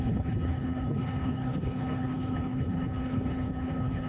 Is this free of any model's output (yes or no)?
no